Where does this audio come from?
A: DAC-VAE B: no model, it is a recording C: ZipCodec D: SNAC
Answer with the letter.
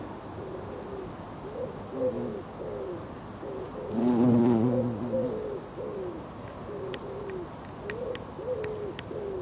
B